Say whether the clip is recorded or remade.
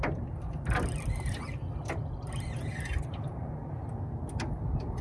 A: recorded